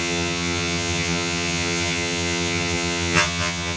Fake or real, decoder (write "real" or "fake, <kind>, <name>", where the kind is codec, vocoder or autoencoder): fake, vocoder, HiFi-GAN